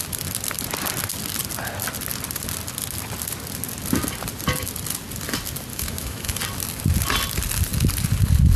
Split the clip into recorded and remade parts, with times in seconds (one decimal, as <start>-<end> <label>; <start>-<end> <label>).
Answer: 0.0-5.7 recorded; 5.7-6.4 remade; 6.4-8.6 recorded